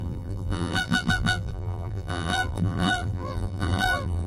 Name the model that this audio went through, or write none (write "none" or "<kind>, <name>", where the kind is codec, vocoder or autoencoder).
vocoder, BigVGAN v2